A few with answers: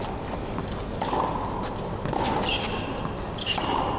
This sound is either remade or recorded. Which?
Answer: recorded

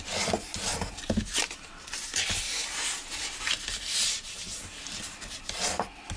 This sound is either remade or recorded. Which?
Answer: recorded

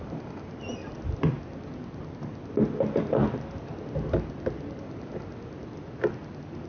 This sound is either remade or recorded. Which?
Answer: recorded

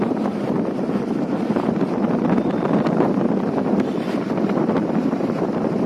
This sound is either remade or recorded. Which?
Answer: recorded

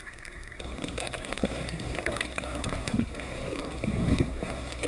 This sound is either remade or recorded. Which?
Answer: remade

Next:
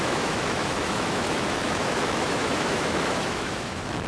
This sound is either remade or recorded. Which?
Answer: remade